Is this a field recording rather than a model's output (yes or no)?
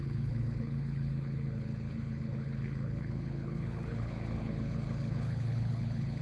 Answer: no